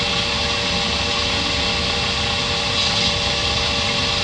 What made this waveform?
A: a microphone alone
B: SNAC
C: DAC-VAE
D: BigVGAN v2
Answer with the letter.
A